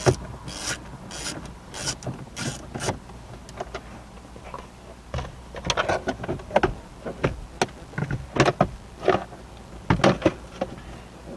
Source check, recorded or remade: recorded